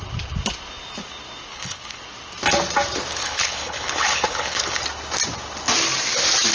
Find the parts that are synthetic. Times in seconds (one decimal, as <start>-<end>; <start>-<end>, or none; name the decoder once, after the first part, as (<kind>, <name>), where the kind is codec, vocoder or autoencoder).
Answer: 1.5-2.0 (codec, HILCodec); 3.2-4.8